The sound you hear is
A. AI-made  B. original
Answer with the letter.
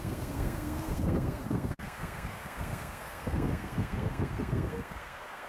A